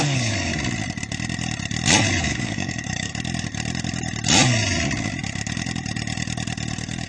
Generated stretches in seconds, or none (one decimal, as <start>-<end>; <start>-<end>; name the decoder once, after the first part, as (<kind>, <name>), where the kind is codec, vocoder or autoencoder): 0.0-0.5 (codec, DAC); 2.2-3.1